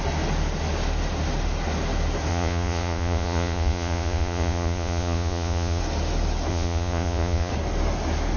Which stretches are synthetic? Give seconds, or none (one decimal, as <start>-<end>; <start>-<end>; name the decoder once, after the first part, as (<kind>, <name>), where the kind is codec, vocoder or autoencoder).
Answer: 2.3-5.8 (vocoder, Vocos); 6.5-7.5